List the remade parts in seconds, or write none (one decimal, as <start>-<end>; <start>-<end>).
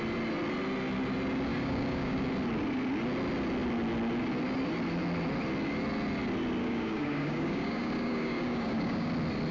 1.5-2.3; 6.6-9.1